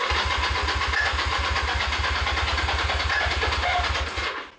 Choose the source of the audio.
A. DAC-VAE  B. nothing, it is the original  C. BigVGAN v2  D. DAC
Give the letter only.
B